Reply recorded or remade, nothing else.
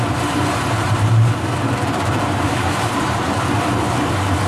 remade